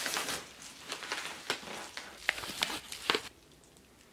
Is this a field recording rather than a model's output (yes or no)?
yes